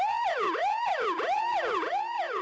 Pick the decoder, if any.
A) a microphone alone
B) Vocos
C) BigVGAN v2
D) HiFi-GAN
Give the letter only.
B